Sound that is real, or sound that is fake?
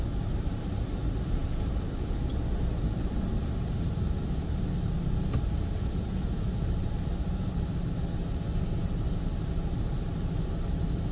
real